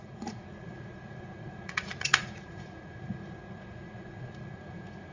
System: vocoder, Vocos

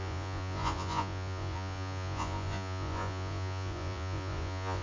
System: vocoder, Vocos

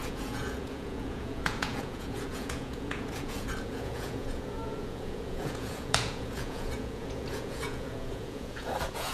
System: vocoder, Vocos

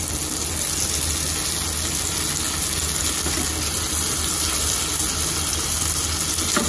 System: none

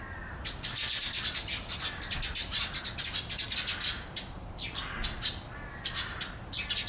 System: none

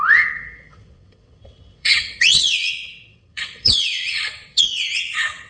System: vocoder, WaveNeXt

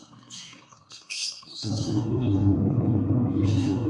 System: codec, SNAC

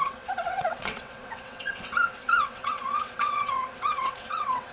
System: vocoder, WaveNeXt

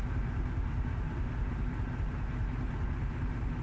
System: none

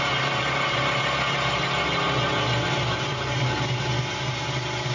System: none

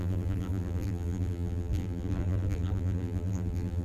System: vocoder, BigVGAN v2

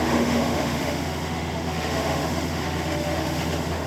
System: autoencoder, DAC-VAE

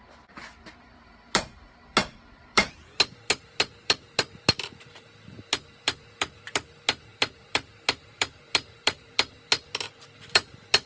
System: vocoder, BigVGAN v2